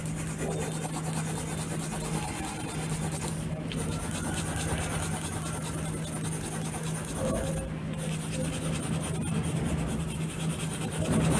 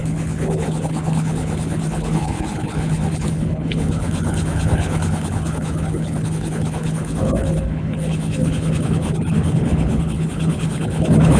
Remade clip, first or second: second